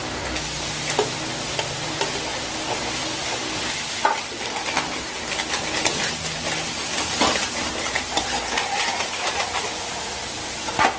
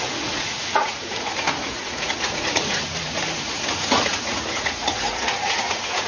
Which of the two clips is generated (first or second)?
second